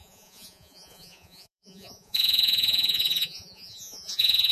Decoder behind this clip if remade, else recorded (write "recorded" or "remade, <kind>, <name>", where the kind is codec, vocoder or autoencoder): remade, vocoder, Vocos